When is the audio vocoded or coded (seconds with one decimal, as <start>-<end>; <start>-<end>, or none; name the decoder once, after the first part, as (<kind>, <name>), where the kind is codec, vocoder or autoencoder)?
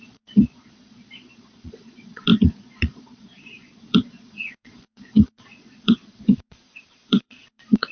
0.0-7.9 (vocoder, Vocos)